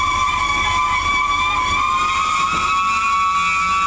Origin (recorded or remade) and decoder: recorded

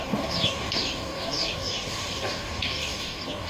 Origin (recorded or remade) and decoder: remade, codec, DAC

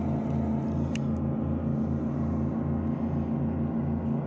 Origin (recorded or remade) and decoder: recorded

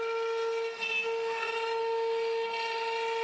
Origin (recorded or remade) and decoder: recorded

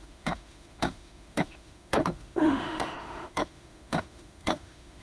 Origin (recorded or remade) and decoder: remade, autoencoder, DAC-VAE